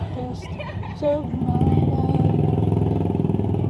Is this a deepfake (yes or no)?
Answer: yes